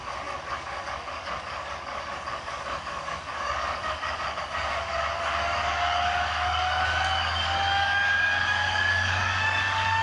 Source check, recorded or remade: remade